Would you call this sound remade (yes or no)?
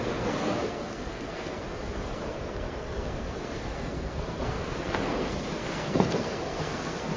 yes